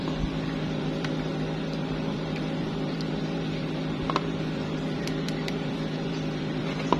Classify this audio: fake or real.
fake